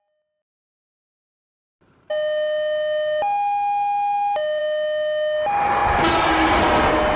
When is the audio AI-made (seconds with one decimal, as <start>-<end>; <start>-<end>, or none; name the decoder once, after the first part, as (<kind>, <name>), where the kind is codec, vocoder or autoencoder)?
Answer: none